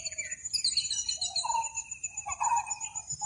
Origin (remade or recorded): recorded